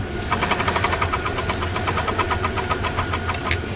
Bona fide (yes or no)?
yes